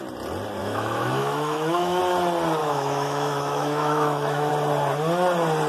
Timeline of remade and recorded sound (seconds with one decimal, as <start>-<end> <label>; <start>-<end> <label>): 0.0-0.6 recorded; 0.6-2.0 remade; 2.0-2.6 recorded; 2.6-4.5 remade; 4.5-5.7 recorded